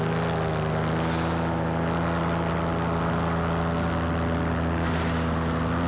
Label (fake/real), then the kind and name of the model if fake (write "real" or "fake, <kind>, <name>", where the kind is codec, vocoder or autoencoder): real